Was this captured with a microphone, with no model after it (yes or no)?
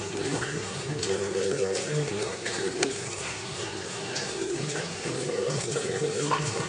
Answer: no